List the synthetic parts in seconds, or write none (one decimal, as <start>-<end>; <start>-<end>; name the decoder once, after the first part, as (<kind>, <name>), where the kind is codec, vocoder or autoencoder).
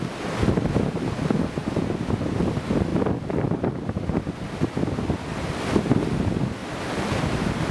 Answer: 1.6-2.4 (vocoder, BigVGAN v2); 6.6-7.2